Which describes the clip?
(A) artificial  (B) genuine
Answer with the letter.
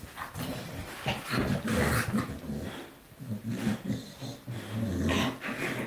B